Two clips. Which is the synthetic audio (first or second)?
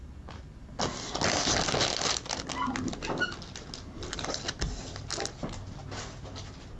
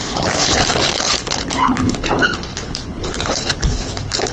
second